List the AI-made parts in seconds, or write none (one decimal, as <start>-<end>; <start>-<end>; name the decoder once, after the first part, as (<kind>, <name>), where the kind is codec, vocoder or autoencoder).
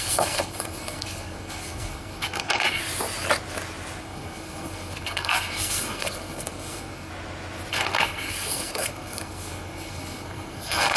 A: 0.0-2.8 (codec, SNAC); 4.0-7.1; 7.7-11.0